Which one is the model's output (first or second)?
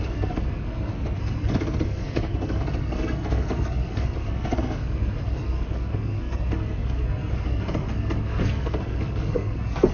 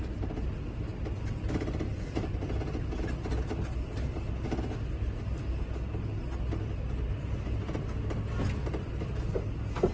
first